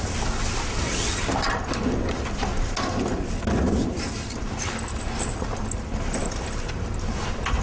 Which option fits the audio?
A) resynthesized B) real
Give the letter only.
B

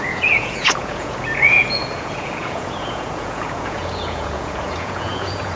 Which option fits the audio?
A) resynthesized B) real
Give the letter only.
A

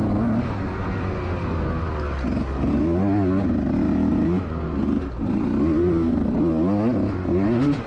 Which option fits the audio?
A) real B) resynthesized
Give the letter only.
A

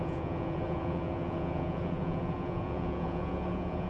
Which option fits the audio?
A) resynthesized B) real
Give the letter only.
A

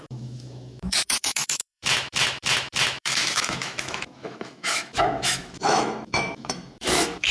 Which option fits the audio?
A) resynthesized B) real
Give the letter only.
A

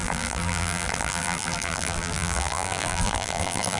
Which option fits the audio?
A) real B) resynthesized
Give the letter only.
B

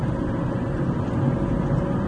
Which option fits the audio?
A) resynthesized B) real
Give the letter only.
B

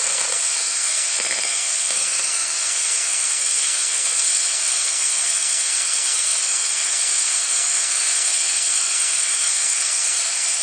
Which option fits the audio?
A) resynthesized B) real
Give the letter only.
A